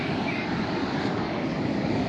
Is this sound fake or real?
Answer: fake